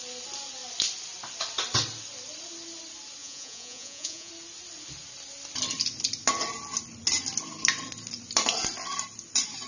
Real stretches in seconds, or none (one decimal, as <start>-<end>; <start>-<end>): 0.0-3.2; 4.3-9.7